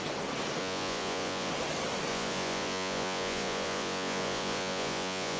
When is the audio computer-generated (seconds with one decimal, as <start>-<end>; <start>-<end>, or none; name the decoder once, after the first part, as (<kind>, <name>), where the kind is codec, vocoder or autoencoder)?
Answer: 0.6-1.5 (vocoder, Vocos); 2.1-5.4